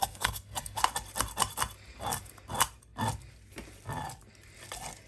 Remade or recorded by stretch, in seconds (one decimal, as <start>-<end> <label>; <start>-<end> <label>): 0.0-0.8 remade; 0.8-5.1 recorded